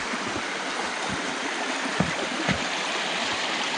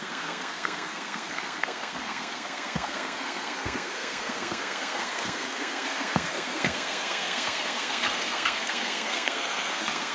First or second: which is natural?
first